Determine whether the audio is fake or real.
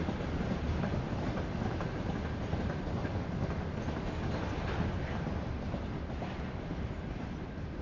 real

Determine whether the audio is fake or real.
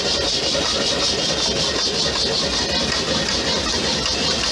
real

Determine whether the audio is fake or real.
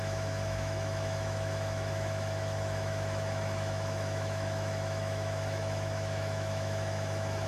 fake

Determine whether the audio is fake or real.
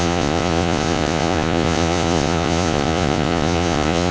fake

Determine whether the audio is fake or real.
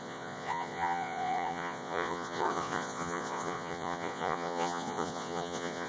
fake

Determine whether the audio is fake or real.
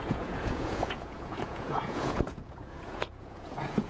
fake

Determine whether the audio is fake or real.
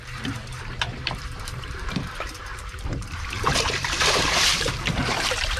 fake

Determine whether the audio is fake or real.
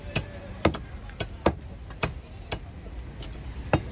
real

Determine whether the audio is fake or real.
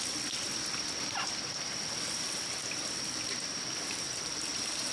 real